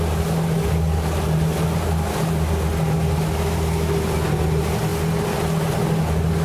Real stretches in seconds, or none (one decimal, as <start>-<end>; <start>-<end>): 0.0-6.4